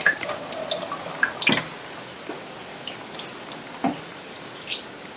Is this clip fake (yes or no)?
no